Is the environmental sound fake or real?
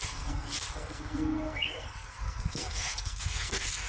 fake